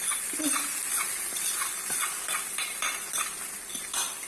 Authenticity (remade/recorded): recorded